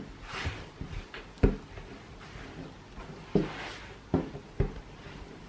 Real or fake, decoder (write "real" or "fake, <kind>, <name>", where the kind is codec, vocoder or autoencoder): real